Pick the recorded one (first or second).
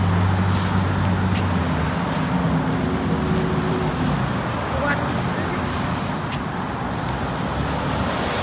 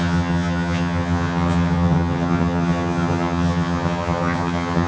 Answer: first